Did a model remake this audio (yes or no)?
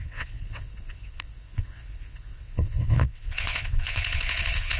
yes